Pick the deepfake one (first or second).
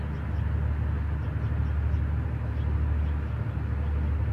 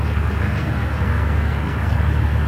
second